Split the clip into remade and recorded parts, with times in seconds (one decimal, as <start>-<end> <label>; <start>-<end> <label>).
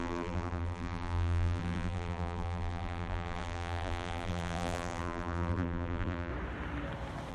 0.0-6.3 remade; 6.3-7.3 recorded